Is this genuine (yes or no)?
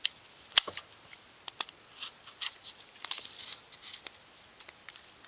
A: yes